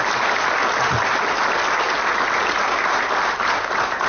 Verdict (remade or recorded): recorded